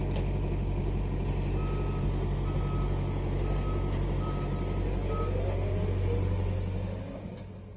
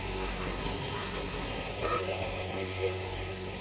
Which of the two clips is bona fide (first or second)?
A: first